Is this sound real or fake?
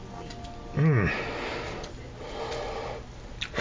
real